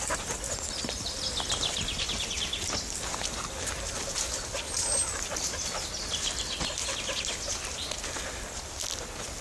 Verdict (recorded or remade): recorded